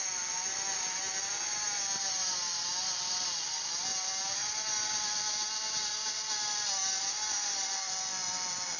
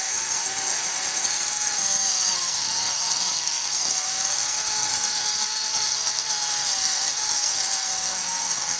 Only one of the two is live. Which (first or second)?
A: first